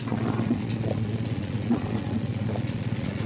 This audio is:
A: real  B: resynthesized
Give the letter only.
B